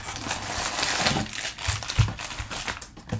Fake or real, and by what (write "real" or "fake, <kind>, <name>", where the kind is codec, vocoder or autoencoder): real